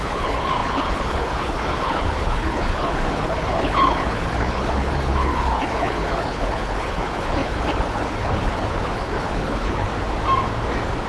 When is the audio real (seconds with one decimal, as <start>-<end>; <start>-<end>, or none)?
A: 9.9-11.1